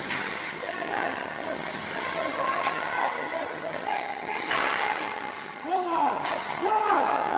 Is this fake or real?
fake